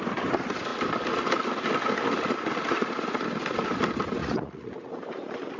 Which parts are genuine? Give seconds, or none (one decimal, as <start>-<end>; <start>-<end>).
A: 0.0-4.2; 4.7-5.6